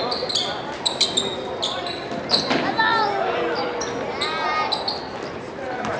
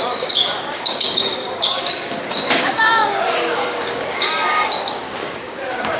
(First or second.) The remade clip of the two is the second